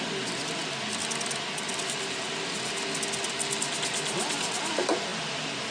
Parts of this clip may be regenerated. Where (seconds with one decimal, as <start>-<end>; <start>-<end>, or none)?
none